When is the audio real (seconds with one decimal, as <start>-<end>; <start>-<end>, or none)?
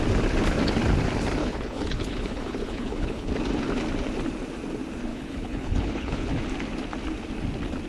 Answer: 0.0-1.4; 3.3-5.1; 6.3-7.9